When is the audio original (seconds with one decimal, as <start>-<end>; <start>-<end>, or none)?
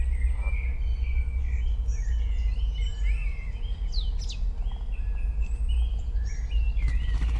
0.0-0.9; 1.6-7.4